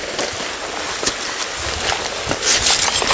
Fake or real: real